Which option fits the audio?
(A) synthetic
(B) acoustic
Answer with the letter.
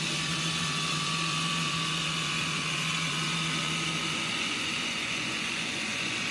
A